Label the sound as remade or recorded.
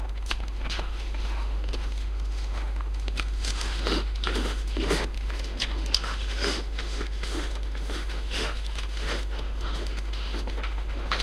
remade